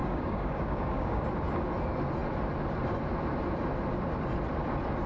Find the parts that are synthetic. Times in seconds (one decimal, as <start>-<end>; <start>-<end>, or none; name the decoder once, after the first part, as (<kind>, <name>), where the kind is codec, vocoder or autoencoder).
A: 0.0-1.2 (codec, DAC)